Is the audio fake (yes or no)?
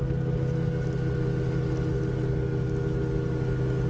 no